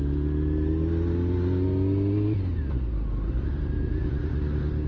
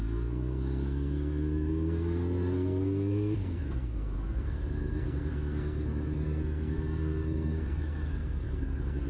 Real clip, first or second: first